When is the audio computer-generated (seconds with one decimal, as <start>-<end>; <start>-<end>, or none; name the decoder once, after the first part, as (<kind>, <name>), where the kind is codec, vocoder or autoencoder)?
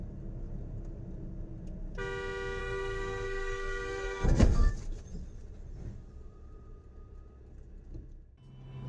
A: 2.6-4.7 (codec, SNAC)